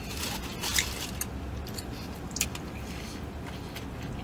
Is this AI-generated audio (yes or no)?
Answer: no